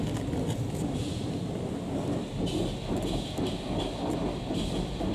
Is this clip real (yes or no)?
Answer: yes